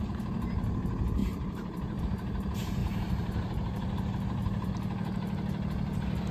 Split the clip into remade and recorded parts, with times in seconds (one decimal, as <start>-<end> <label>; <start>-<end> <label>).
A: 0.0-1.2 recorded; 1.2-2.0 remade; 2.0-2.8 recorded; 2.8-4.7 remade; 4.7-6.3 recorded